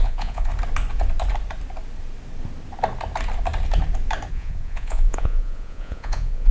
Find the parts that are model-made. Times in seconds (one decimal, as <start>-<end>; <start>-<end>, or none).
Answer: 0.0-0.5; 4.3-6.5